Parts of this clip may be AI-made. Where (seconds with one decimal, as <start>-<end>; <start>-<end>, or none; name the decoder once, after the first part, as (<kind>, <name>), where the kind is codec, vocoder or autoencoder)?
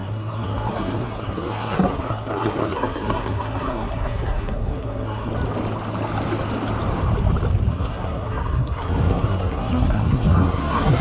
0.0-5.3 (codec, SNAC); 7.7-11.0